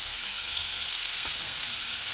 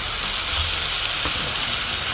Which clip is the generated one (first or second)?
first